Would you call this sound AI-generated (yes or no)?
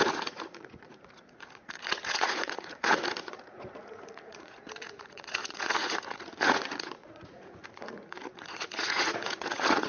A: yes